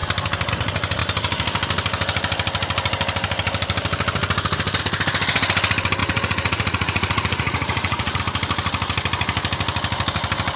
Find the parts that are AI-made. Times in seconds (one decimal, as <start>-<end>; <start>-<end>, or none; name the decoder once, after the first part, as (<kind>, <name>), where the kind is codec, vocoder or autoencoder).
6.0-8.2 (vocoder, Vocos)